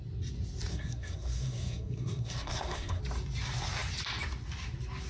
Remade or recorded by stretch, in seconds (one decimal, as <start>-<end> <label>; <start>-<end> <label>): 0.0-0.7 recorded; 0.7-3.0 remade; 3.0-5.1 recorded